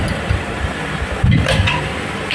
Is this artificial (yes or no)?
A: yes